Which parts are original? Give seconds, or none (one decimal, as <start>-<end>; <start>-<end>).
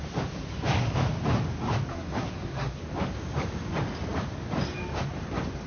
0.0-1.9; 2.8-5.7